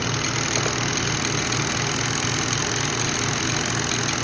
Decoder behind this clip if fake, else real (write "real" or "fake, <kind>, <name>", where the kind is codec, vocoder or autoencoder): real